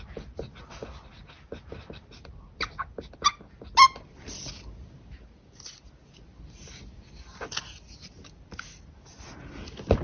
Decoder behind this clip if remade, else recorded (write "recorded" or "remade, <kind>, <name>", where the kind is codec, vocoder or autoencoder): recorded